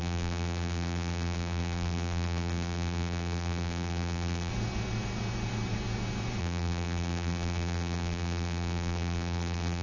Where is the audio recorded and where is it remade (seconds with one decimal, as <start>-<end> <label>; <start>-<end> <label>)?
0.0-4.5 remade; 4.5-6.4 recorded; 6.4-9.8 remade